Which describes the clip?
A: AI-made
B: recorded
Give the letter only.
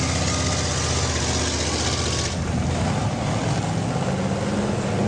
B